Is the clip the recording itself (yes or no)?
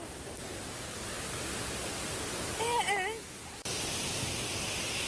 yes